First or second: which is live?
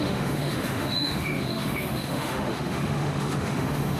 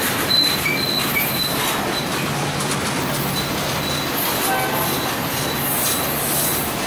second